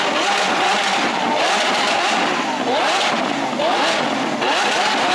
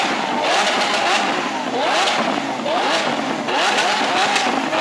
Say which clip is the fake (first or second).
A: first